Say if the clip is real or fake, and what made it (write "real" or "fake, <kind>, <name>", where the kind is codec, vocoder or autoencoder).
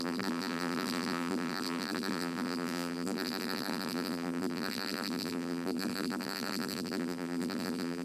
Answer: fake, vocoder, BigVGAN v2